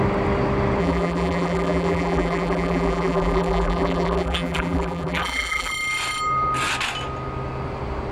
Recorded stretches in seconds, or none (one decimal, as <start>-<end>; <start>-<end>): 0.0-0.8; 5.7-8.1